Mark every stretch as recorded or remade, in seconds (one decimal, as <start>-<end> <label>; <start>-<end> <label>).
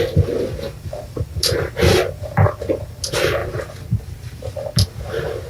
0.0-3.4 recorded; 3.4-4.5 remade; 4.5-5.5 recorded